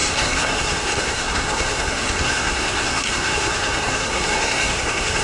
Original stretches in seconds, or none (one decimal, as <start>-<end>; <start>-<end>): none

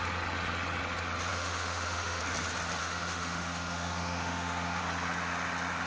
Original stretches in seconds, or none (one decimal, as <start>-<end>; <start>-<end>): 0.0-1.3; 2.2-2.8; 4.8-5.9

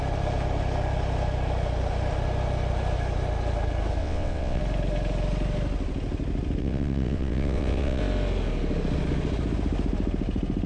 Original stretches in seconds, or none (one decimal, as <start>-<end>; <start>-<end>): 0.0-4.0; 4.6-6.6; 8.0-10.7

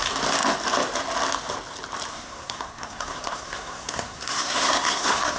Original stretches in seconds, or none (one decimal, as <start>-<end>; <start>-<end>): 0.0-2.1

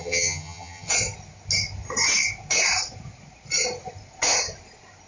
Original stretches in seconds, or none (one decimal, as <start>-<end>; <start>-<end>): 0.9-5.1

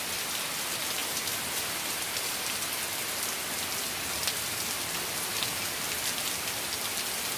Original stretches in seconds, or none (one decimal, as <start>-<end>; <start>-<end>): 0.0-7.4

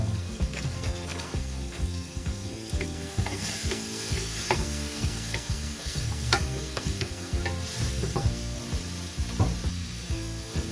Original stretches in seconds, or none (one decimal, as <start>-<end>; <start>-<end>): 7.4-7.9; 8.6-9.7